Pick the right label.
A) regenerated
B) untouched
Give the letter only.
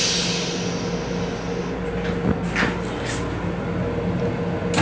B